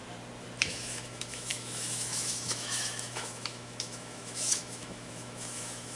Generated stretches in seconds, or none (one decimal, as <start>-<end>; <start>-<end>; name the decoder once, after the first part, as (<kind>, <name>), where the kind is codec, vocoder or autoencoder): 0.6-6.0 (autoencoder, DAC-VAE)